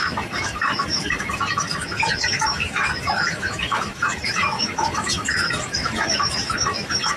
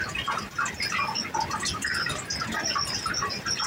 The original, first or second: second